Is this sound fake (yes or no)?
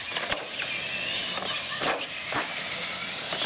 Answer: no